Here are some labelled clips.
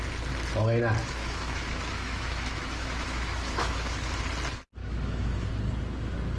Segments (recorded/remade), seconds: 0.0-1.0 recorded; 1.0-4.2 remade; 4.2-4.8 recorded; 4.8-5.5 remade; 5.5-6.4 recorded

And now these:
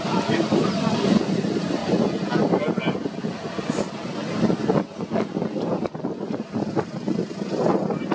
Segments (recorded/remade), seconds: 0.0-8.1 recorded